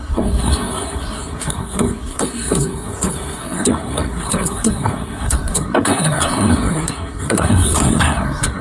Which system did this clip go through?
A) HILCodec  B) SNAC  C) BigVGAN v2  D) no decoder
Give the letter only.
B